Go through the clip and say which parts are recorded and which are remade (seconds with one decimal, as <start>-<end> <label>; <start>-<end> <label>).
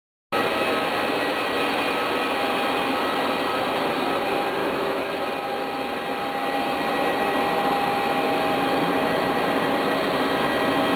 0.0-4.6 recorded; 4.6-5.1 remade; 5.1-11.0 recorded